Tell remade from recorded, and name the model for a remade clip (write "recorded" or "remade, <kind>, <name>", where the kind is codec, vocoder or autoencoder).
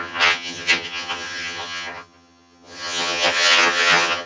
remade, vocoder, HiFi-GAN